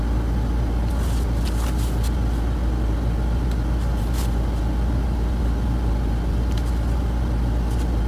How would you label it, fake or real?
real